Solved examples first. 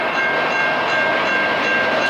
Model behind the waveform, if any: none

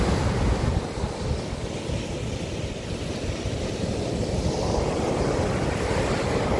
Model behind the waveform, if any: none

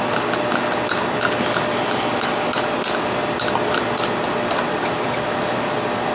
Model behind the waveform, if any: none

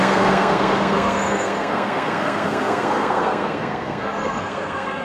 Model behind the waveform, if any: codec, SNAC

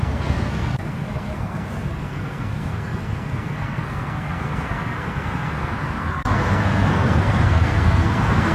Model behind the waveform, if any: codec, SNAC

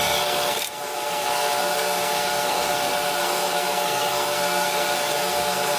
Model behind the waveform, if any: codec, SNAC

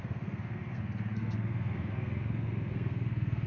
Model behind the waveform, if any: codec, SNAC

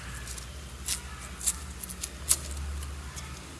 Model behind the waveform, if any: none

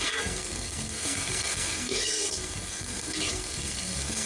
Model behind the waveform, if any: codec, SNAC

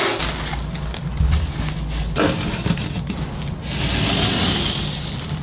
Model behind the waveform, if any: none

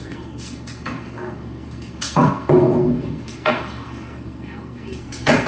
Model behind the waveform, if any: codec, SNAC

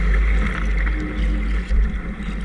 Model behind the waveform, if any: none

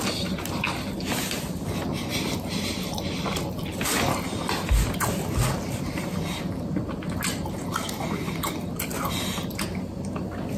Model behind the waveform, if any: none